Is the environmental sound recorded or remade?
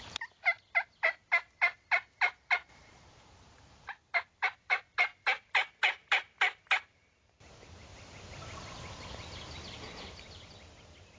recorded